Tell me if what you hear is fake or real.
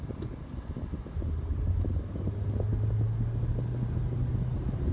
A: real